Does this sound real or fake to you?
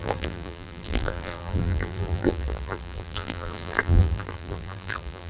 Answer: fake